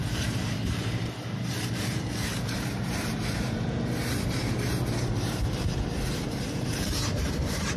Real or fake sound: fake